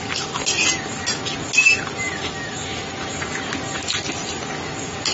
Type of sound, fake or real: real